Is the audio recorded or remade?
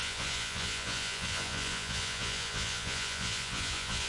remade